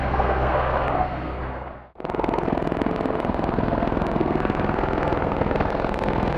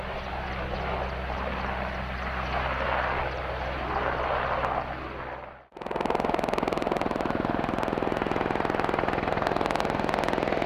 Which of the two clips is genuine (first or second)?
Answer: second